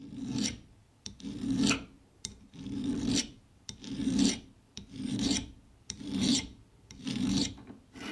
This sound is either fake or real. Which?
fake